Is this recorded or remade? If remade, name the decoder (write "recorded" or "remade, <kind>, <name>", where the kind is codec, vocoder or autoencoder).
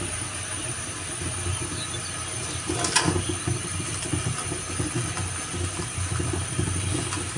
recorded